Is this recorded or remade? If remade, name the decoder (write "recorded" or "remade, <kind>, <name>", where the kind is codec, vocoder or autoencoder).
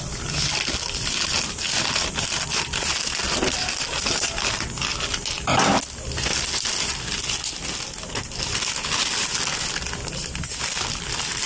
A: recorded